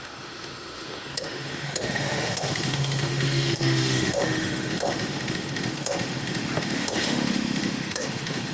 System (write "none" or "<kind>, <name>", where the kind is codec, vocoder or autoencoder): autoencoder, DAC-VAE